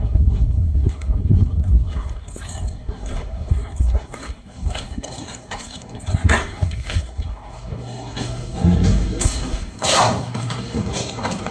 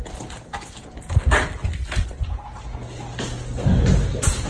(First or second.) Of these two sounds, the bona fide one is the second